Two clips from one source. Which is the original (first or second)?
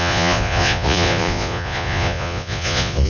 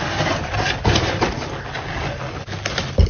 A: second